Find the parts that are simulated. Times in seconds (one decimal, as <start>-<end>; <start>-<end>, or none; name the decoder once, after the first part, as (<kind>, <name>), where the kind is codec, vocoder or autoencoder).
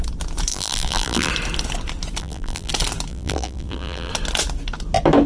0.5-1.3 (vocoder, BigVGAN v2); 2.2-2.7; 3.1-4.1